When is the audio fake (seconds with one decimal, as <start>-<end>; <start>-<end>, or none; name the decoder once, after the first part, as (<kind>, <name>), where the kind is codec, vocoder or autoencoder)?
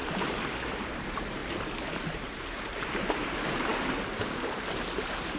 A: 0.6-1.4 (vocoder, BigVGAN v2); 2.0-3.7; 4.6-5.4